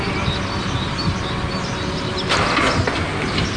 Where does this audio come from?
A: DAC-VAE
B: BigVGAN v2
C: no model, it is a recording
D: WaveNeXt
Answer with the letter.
C